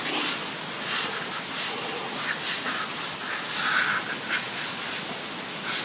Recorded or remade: recorded